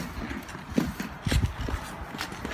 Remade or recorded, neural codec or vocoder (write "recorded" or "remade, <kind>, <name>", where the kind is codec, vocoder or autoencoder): recorded